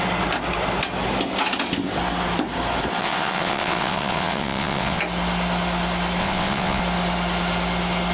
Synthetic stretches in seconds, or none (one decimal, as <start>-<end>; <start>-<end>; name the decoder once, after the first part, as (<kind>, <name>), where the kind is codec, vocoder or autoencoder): 3.0-5.0 (vocoder, WaveNeXt); 6.2-6.8